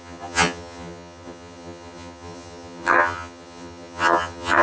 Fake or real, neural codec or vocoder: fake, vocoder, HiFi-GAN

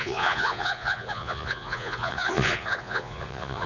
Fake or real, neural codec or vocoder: fake, vocoder, Vocos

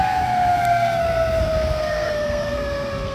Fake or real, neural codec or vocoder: fake, codec, SNAC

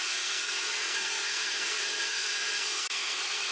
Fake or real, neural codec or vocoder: fake, codec, SNAC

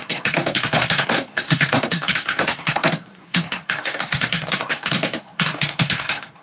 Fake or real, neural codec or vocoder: fake, codec, SNAC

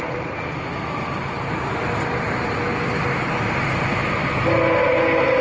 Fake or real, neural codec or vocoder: real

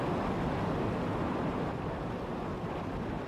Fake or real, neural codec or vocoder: real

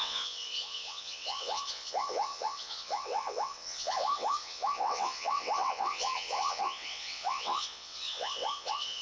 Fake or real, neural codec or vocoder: fake, vocoder, WaveNeXt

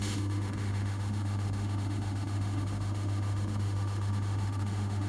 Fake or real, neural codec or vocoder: fake, autoencoder, DAC-VAE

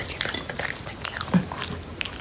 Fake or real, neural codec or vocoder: real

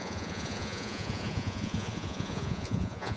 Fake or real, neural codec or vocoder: fake, vocoder, Vocos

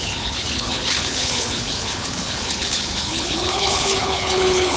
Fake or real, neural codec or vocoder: fake, codec, HILCodec